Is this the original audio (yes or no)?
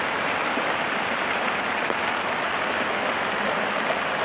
yes